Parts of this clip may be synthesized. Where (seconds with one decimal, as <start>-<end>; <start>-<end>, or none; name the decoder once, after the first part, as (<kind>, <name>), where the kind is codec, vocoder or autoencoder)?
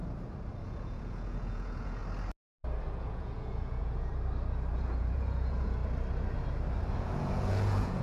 0.6-2.0 (vocoder, Vocos); 2.8-4.1; 4.7-5.8; 6.9-8.0